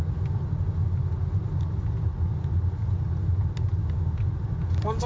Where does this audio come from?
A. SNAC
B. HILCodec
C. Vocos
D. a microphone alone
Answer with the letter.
D